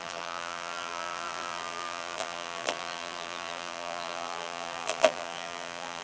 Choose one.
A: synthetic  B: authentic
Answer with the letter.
A